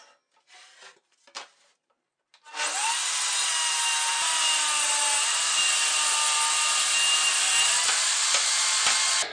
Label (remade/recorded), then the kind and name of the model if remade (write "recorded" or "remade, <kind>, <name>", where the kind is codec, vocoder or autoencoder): recorded